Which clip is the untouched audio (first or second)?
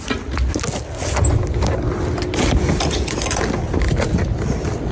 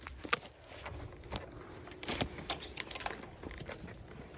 first